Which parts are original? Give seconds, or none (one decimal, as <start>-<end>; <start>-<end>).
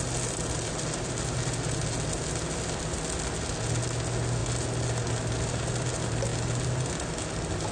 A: 0.0-7.7